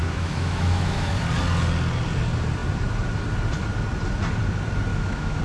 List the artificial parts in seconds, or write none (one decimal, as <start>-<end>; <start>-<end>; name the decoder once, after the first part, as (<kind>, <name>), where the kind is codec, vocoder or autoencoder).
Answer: 0.0-1.1 (autoencoder, DAC-VAE); 4.9-5.4